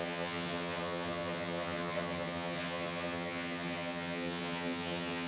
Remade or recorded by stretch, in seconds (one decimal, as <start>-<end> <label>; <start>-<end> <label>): 0.0-5.3 remade